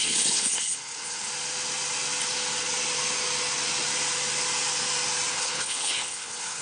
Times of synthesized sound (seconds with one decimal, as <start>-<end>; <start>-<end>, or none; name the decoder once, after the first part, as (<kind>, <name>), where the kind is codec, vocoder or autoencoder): 0.0-1.3 (codec, HILCodec); 5.3-6.6